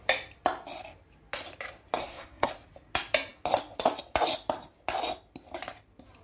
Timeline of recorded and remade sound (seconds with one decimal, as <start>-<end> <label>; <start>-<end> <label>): 0.0-2.0 recorded; 2.0-2.5 remade; 2.5-6.2 recorded